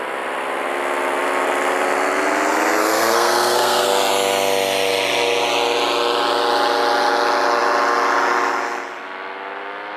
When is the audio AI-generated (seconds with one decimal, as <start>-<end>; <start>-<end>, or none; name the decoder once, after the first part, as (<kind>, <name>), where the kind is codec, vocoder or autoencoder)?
2.8-4.1 (codec, SNAC)